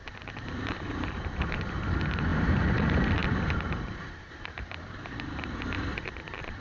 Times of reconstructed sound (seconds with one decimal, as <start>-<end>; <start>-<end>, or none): 0.0-6.6